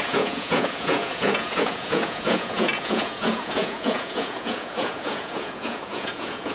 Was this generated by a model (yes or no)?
yes